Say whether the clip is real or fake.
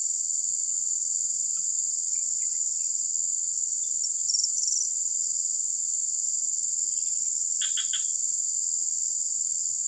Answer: real